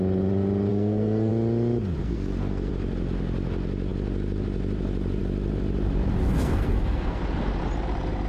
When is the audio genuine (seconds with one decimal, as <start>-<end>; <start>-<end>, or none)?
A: 0.0-0.7; 1.3-2.0; 2.7-6.2; 7.2-8.3